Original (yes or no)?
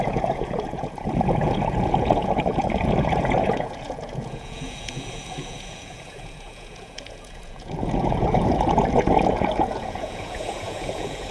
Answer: no